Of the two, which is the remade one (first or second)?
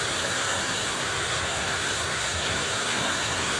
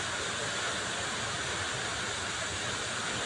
first